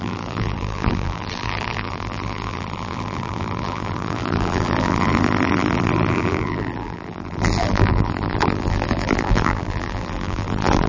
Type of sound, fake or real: fake